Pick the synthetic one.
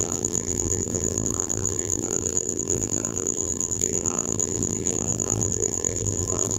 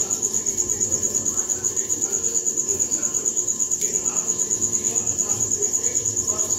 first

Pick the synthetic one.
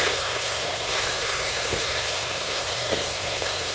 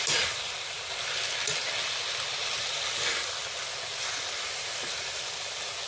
first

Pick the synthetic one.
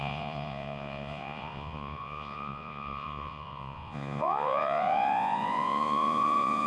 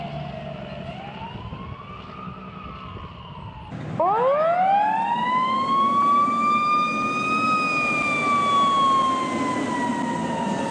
first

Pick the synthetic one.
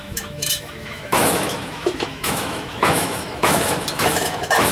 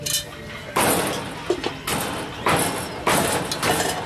first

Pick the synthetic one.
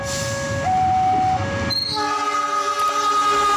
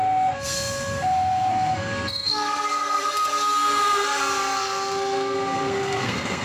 second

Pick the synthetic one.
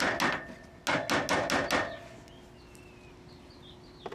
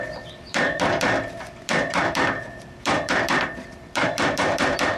second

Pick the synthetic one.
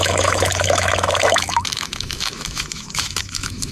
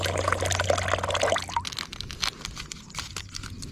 first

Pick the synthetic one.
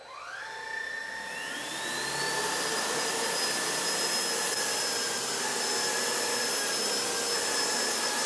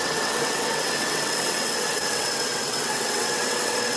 second